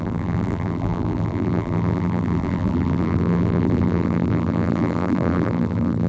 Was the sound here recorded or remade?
remade